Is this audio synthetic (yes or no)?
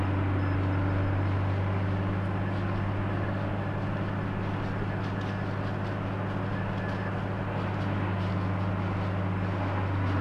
no